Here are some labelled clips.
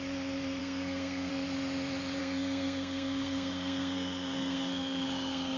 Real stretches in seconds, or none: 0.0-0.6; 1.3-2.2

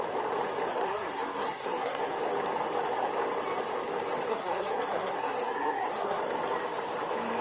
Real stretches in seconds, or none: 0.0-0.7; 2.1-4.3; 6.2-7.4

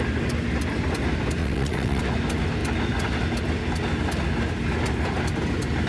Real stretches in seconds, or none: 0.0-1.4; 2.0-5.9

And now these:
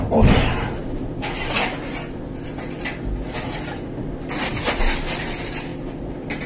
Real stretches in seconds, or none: 0.0-6.5